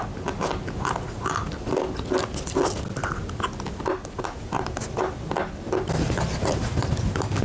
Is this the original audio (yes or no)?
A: yes